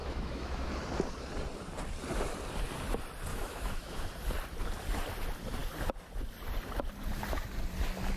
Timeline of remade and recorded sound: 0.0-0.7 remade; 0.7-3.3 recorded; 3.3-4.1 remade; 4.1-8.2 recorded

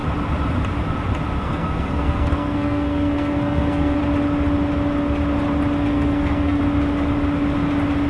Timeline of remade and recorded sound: 0.0-1.4 recorded; 1.4-4.0 remade; 4.0-5.9 recorded; 5.9-6.6 remade; 6.6-8.1 recorded

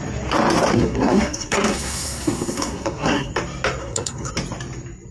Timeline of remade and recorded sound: 0.0-0.7 recorded; 0.7-3.3 remade; 3.3-3.8 recorded; 3.8-4.3 remade; 4.3-5.1 recorded

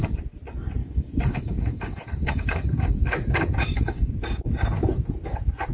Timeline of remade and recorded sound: 0.0-0.8 recorded; 0.8-4.2 remade; 4.2-5.7 recorded

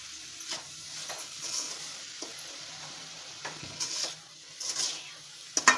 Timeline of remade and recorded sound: 0.0-1.2 recorded; 1.2-1.7 remade; 1.7-3.6 recorded; 3.6-4.1 remade; 4.1-5.8 recorded

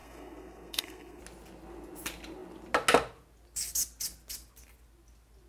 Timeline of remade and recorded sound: 0.0-1.2 remade; 1.2-5.5 recorded